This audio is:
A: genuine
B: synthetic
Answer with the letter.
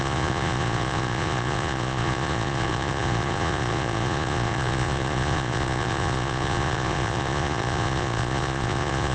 B